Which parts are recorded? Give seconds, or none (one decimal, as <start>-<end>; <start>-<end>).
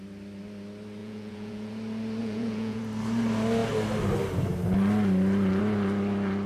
0.0-1.0; 1.7-2.2; 2.8-6.5